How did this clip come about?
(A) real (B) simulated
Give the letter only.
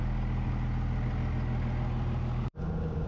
A